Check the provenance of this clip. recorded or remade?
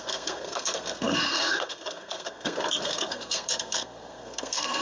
remade